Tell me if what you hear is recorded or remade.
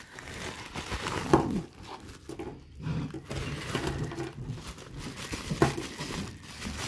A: recorded